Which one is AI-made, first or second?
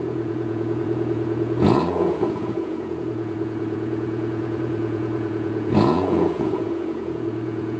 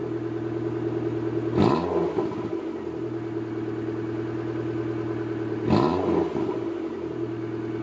first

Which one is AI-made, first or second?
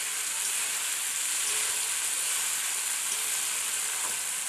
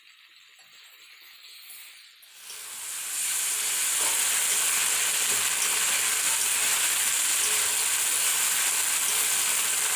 first